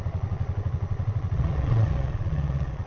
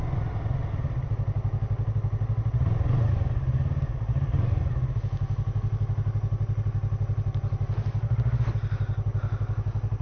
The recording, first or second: second